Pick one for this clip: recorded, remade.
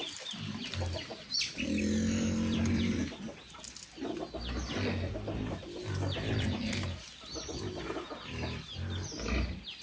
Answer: recorded